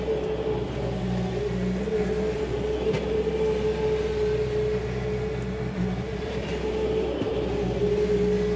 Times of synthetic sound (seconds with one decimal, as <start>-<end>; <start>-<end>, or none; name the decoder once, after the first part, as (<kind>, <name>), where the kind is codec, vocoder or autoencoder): none